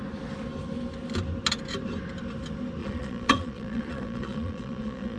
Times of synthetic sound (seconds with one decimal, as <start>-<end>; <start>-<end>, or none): 2.8-5.2